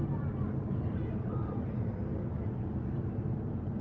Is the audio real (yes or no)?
yes